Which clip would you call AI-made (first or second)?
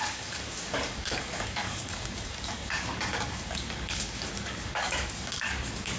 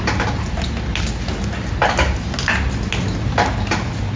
first